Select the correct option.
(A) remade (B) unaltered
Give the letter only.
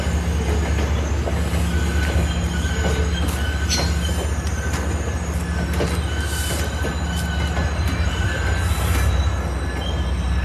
B